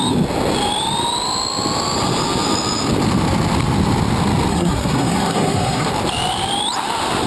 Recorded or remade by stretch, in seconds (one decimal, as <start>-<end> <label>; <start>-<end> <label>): 0.0-4.5 recorded; 4.5-5.9 remade; 5.9-7.3 recorded